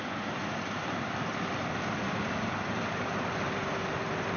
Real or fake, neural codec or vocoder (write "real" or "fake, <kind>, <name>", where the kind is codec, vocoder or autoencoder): fake, vocoder, BigVGAN v2